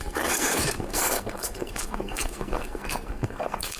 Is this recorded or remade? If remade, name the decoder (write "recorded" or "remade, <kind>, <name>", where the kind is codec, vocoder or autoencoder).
remade, codec, SNAC